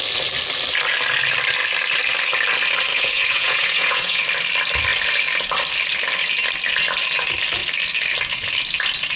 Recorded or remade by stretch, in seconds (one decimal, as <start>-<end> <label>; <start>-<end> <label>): 0.0-2.9 recorded; 2.9-4.2 remade; 4.2-9.2 recorded